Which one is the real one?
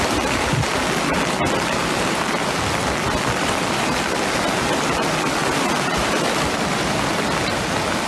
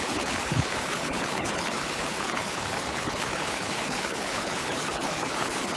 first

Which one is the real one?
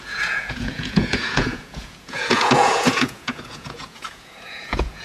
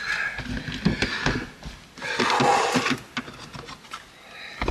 second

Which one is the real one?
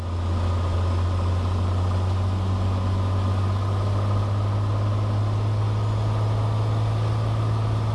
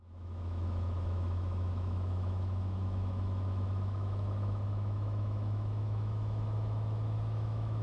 first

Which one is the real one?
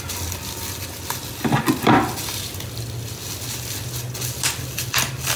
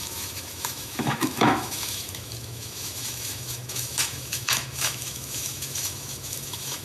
first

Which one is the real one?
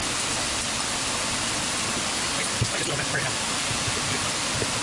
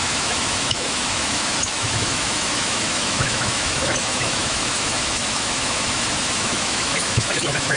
first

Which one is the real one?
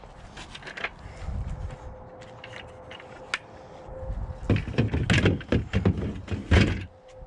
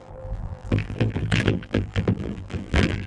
first